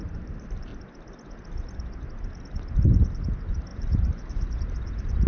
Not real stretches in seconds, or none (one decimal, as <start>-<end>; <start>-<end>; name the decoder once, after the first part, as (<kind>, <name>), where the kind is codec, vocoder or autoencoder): 0.0-0.7 (vocoder, BigVGAN v2); 3.2-5.3